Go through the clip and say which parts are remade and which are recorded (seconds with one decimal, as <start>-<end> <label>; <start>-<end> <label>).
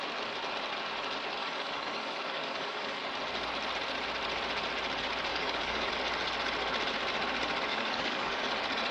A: 0.0-1.4 recorded; 1.4-3.0 remade; 3.0-5.3 recorded; 5.3-5.9 remade; 5.9-7.7 recorded; 7.7-8.4 remade; 8.4-8.9 recorded